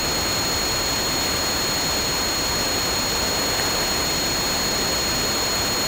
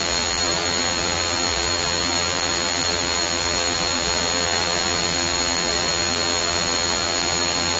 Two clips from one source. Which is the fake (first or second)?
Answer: second